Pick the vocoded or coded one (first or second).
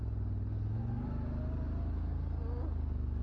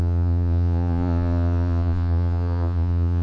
second